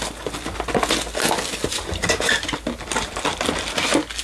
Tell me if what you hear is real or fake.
real